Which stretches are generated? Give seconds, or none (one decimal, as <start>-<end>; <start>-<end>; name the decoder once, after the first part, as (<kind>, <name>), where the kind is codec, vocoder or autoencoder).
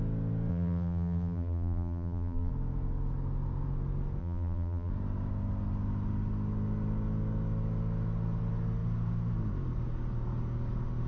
0.5-2.5 (vocoder, BigVGAN v2); 4.2-4.9